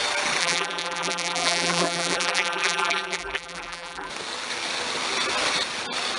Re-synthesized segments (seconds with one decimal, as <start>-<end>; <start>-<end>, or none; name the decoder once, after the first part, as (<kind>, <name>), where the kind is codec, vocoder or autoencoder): 0.4-4.1 (vocoder, BigVGAN v2)